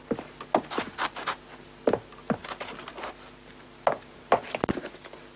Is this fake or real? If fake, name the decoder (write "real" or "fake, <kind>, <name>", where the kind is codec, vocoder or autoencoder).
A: real